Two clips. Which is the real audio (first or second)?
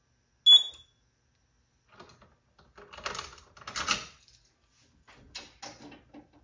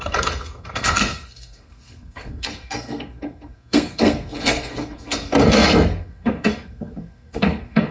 first